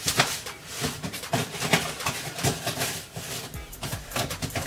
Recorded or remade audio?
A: remade